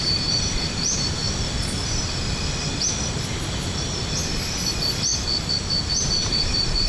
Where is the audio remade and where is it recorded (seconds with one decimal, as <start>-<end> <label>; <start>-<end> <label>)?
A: 0.0-1.2 remade; 1.2-4.2 recorded; 4.2-5.1 remade; 5.1-5.9 recorded; 5.9-6.9 remade